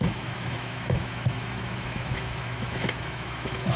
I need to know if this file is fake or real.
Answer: fake